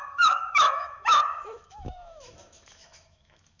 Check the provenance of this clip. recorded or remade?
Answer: remade